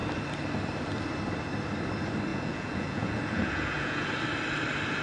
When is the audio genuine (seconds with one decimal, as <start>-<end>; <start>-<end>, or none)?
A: 0.0-2.3; 4.1-5.0

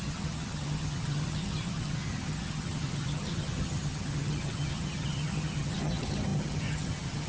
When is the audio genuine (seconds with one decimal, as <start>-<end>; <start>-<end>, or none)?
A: none

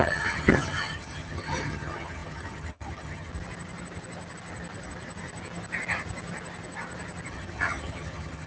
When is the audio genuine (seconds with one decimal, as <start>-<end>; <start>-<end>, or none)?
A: 3.3-7.3